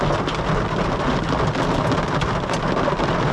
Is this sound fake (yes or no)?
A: no